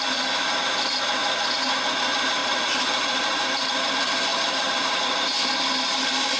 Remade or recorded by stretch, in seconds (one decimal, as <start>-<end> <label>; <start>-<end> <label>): 0.0-2.4 recorded; 2.4-3.9 remade; 3.9-4.3 recorded; 4.3-5.0 remade; 5.0-6.4 recorded